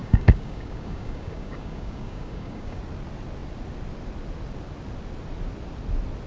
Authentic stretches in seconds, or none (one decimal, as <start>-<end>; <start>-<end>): 2.8-6.3